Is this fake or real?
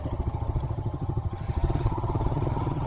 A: fake